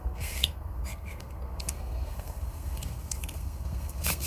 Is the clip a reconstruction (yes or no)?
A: yes